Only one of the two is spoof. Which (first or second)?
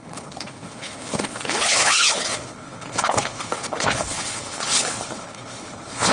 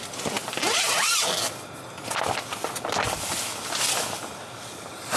first